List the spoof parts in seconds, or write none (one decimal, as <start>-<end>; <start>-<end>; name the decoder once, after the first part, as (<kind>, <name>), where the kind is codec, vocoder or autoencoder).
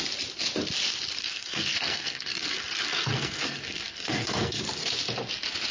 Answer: 1.2-4.6 (codec, SNAC)